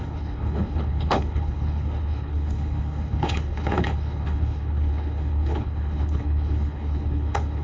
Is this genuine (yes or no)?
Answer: no